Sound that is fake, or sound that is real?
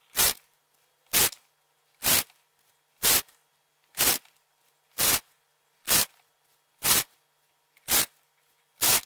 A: real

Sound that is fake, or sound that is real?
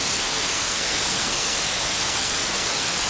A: fake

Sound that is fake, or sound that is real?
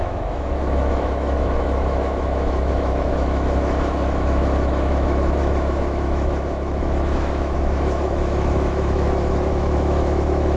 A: fake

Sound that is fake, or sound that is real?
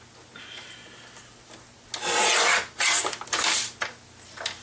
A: real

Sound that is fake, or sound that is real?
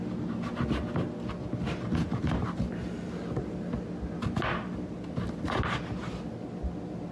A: real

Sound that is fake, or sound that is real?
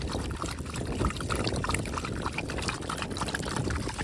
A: fake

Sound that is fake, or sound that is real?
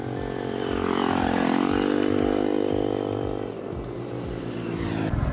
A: real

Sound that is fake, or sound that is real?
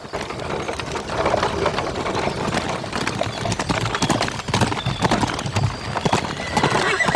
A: real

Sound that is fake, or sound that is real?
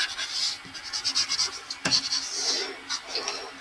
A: real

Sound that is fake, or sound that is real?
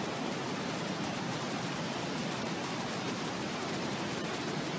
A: fake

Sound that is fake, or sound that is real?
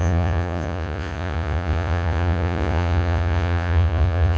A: fake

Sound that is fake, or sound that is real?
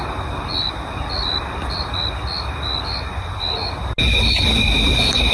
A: real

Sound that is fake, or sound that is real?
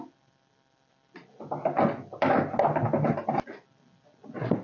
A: real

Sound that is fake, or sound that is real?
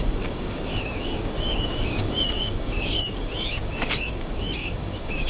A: fake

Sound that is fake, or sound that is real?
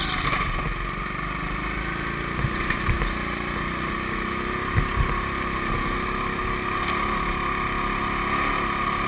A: real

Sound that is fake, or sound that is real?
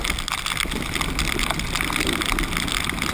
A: real